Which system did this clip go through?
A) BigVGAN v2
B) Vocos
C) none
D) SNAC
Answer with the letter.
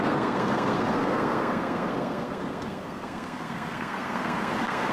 D